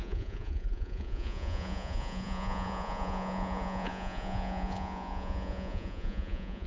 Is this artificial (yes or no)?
yes